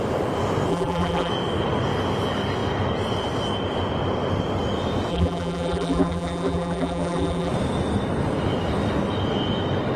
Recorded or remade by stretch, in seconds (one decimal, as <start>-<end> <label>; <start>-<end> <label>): 0.0-0.7 recorded; 0.7-1.3 remade; 1.3-5.1 recorded; 5.1-7.5 remade; 7.5-10.0 recorded